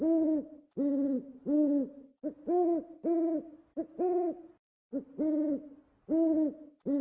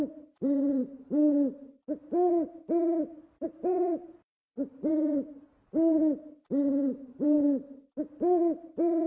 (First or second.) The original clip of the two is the first